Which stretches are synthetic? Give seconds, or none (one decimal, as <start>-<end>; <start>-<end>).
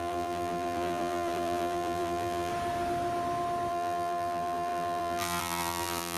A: 0.0-2.5; 3.7-6.2